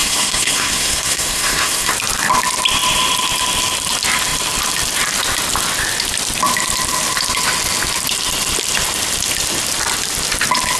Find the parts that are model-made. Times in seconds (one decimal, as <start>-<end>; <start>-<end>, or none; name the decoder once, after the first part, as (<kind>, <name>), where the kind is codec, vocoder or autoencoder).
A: 0.0-1.9 (codec, SNAC)

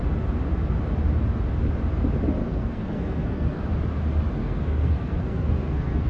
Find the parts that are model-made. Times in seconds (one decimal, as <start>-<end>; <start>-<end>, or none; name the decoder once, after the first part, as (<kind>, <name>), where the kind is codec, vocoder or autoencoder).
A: 2.4-3.6 (codec, SNAC); 4.4-6.1

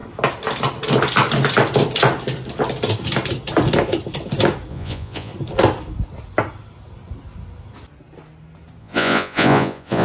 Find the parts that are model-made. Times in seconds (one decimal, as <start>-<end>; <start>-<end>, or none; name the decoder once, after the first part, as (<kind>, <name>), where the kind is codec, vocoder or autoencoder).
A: 4.7-5.3 (vocoder, Vocos); 8.8-10.0

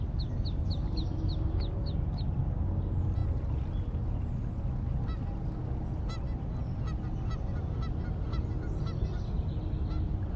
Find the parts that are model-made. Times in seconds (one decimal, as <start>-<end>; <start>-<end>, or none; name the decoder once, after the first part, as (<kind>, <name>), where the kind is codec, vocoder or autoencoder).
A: none

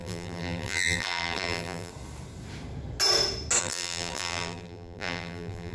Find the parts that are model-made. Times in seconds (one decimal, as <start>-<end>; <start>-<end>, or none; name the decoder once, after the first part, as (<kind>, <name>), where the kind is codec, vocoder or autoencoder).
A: 0.0-1.9 (vocoder, BigVGAN v2); 3.6-5.7